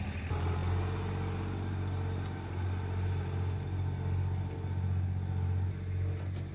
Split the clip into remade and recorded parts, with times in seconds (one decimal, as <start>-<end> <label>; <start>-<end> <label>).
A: 0.0-6.5 recorded